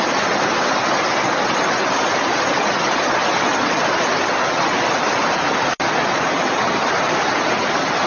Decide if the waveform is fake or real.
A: real